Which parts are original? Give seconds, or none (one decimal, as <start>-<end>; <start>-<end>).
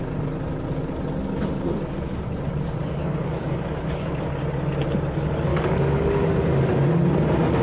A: 0.0-3.0; 4.2-5.5; 6.3-7.6